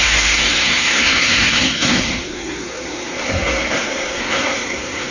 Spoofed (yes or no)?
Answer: yes